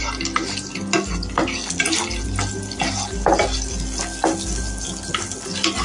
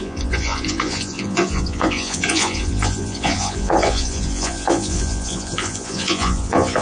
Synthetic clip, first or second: second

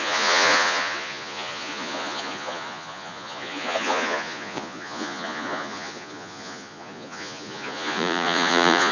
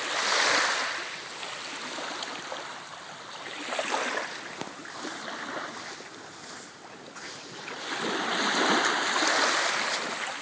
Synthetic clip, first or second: first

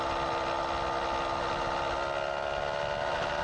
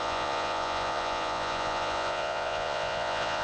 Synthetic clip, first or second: second